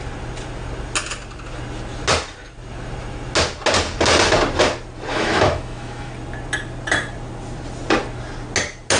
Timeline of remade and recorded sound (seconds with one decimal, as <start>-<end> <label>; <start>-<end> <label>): 0.0-5.1 recorded; 5.1-6.1 remade; 6.1-9.0 recorded